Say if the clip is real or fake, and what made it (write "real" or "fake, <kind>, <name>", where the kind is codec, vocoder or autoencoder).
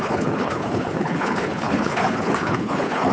fake, codec, HILCodec